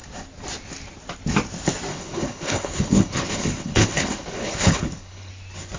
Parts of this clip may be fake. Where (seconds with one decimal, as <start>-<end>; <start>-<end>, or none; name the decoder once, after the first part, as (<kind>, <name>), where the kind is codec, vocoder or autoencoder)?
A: 1.9-5.3 (codec, HILCodec)